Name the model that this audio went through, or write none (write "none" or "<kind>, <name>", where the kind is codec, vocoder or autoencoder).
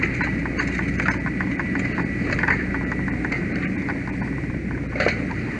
none